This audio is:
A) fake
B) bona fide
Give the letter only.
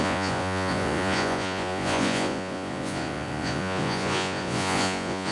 A